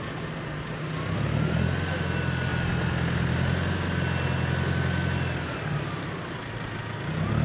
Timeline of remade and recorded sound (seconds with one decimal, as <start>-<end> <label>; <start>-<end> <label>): 0.0-7.4 recorded

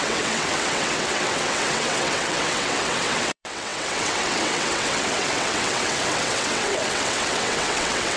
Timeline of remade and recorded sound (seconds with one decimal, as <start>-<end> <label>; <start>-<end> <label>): 0.0-8.2 remade